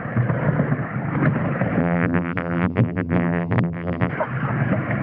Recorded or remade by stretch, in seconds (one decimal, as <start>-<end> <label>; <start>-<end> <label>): 0.0-1.8 recorded; 1.8-4.1 remade; 4.1-5.0 recorded